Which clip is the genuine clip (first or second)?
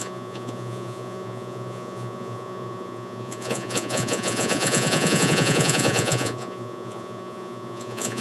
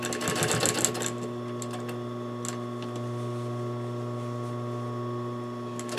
second